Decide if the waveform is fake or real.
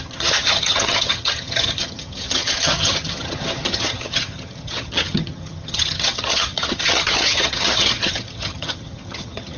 fake